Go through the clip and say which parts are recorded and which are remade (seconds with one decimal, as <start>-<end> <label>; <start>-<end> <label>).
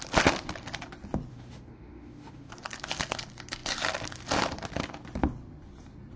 0.0-1.3 recorded; 1.3-2.5 remade; 2.5-6.2 recorded